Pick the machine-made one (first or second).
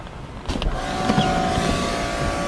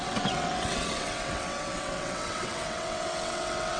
second